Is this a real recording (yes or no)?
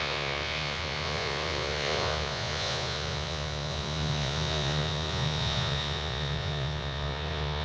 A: no